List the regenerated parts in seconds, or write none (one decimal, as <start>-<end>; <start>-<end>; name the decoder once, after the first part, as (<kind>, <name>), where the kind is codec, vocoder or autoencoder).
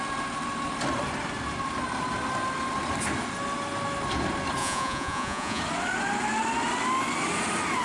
4.6-5.6 (vocoder, Vocos)